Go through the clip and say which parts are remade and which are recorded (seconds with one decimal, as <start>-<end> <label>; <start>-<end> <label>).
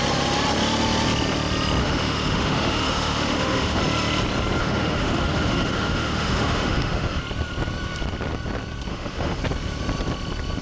0.0-1.8 recorded; 1.8-3.8 remade; 3.8-4.6 recorded; 4.6-7.2 remade; 7.2-8.9 recorded; 8.9-9.4 remade; 9.4-10.6 recorded